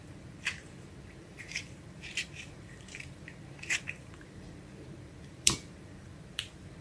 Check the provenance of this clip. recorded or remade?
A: remade